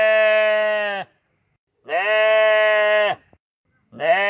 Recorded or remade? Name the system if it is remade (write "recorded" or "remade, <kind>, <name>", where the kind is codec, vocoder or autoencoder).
recorded